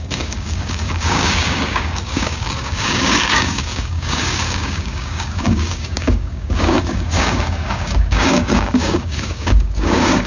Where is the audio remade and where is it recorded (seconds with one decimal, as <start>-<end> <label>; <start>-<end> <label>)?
0.0-10.3 remade